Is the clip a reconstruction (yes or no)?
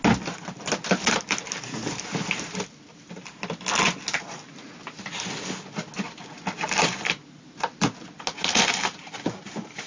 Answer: no